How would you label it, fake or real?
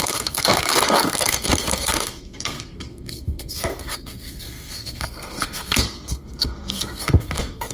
fake